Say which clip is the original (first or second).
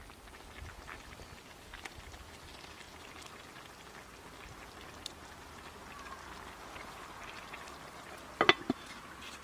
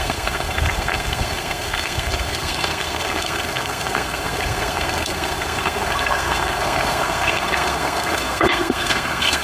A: first